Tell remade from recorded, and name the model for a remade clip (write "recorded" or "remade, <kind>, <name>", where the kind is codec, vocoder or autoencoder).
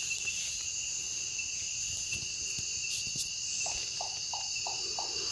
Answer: recorded